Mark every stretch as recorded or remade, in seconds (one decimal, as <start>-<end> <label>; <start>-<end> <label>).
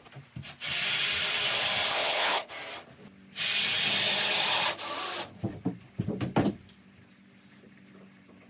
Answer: 0.0-1.9 recorded; 1.9-2.5 remade; 2.5-8.5 recorded